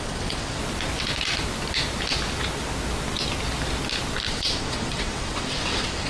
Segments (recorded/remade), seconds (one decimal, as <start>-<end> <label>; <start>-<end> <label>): 0.0-0.6 remade; 0.6-4.3 recorded; 4.3-6.1 remade